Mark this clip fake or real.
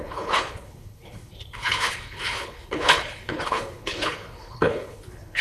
fake